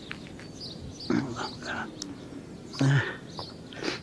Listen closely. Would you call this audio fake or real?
real